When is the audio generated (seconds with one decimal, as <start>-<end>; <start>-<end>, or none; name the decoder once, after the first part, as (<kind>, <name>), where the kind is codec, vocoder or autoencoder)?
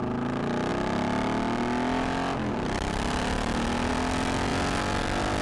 none